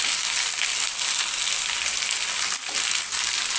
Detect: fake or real real